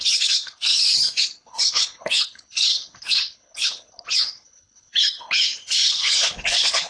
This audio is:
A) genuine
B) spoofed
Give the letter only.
B